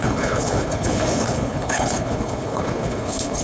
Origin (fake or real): fake